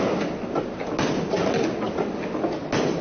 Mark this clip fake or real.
real